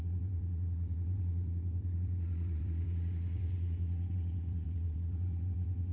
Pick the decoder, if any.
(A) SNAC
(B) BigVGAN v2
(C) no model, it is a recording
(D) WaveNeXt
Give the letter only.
D